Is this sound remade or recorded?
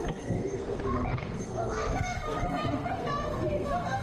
remade